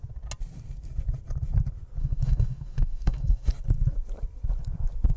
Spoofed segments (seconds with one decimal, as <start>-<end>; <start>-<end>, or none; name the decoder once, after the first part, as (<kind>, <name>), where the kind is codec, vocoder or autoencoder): 2.0-3.5 (codec, DAC)